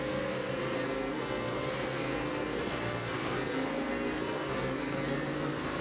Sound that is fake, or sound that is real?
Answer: fake